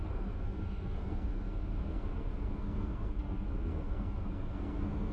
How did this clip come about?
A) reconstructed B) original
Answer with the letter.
A